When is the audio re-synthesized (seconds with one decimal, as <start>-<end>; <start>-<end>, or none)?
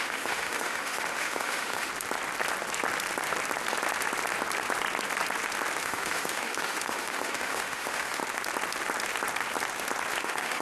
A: 0.0-1.9; 5.8-8.2; 10.2-10.6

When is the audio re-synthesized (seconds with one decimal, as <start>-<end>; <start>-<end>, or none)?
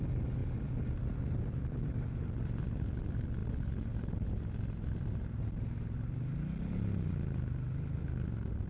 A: none